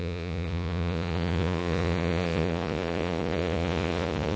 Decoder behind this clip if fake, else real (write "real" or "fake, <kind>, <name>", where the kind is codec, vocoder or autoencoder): fake, vocoder, Vocos